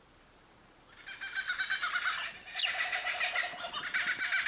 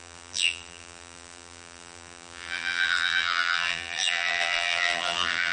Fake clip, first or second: second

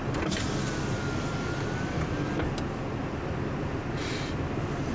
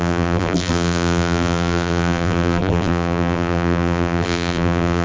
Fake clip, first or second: second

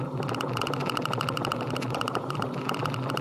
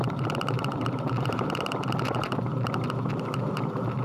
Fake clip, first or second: second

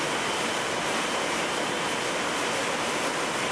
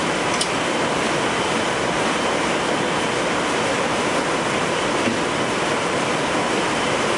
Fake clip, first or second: second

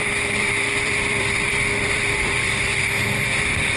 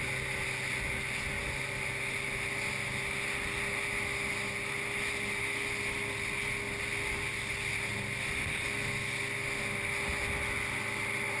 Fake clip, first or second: first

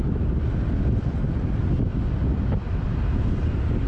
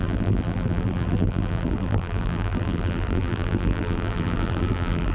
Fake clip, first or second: second